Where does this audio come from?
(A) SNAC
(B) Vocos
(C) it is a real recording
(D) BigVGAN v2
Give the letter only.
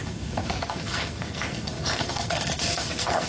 A